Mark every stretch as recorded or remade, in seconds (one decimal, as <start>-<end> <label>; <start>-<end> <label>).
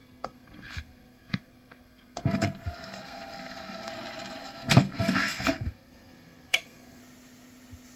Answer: 0.0-3.9 remade; 3.9-4.4 recorded; 4.4-7.0 remade; 7.0-8.0 recorded